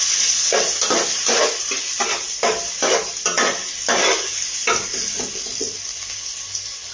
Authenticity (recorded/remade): recorded